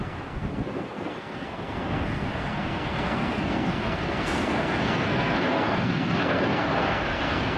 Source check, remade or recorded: remade